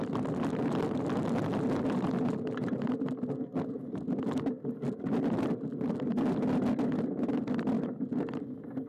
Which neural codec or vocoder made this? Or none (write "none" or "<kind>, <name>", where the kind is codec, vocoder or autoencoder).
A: none